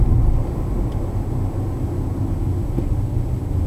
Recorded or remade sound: recorded